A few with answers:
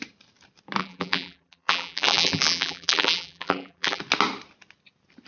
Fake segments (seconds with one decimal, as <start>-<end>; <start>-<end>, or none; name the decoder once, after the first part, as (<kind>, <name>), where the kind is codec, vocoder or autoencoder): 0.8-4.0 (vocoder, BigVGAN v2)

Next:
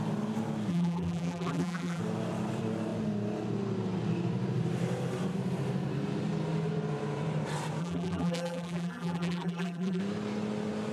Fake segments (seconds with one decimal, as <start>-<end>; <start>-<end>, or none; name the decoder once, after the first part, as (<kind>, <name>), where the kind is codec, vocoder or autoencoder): 0.7-2.0 (vocoder, BigVGAN v2); 7.8-10.0

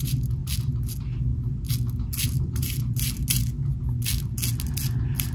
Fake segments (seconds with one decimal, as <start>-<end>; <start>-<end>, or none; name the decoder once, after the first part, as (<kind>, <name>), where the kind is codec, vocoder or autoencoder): none

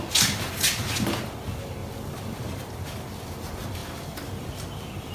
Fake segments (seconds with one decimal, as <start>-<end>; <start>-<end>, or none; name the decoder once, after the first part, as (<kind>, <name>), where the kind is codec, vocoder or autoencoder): 1.8-2.6 (vocoder, BigVGAN v2); 3.8-5.1

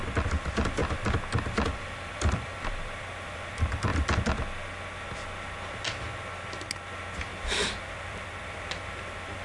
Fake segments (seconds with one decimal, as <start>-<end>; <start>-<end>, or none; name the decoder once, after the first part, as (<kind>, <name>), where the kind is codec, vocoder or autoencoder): 0.0-0.8 (vocoder, BigVGAN v2); 1.8-3.9; 7.8-9.4

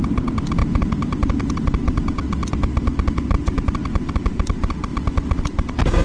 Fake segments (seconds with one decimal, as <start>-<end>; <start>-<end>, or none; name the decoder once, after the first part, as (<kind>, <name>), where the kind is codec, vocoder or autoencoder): 0.0-2.2 (vocoder, BigVGAN v2); 3.3-4.9; 5.4-6.0